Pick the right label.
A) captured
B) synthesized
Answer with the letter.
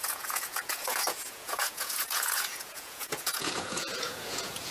B